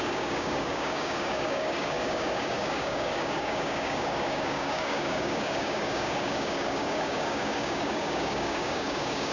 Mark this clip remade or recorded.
remade